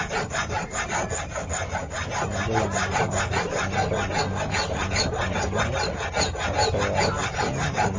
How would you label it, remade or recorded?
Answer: recorded